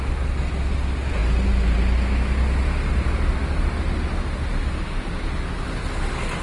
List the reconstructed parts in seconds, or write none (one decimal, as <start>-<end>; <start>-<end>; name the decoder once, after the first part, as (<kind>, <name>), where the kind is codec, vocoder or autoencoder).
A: none